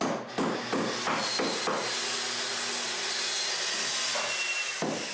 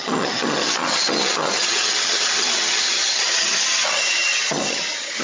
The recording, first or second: first